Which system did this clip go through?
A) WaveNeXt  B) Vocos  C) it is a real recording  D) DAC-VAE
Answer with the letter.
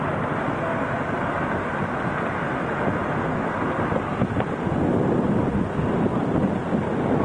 C